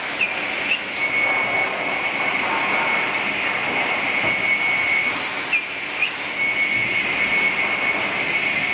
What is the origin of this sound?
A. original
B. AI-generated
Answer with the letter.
A